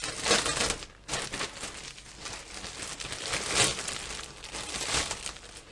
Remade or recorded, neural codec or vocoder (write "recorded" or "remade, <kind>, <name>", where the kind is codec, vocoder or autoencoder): recorded